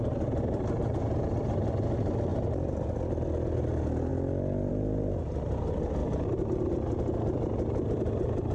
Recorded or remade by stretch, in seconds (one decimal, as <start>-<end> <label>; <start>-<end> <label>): 0.0-2.3 recorded; 2.3-2.8 remade; 2.8-8.5 recorded